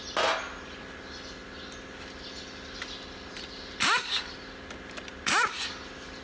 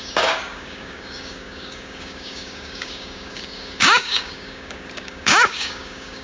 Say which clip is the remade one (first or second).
second